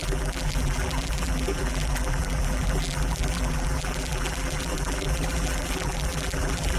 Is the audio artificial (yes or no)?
yes